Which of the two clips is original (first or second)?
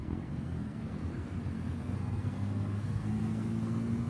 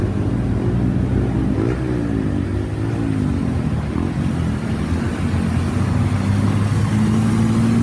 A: second